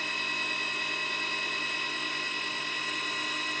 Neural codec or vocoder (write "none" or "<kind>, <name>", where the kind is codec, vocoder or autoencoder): none